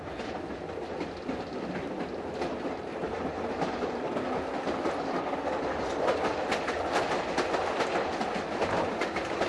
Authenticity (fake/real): real